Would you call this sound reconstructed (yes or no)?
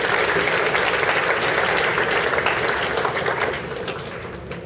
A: no